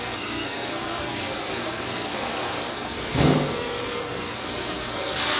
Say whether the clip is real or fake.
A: fake